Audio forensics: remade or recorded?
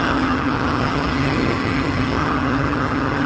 remade